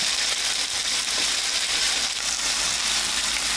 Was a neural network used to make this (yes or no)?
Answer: no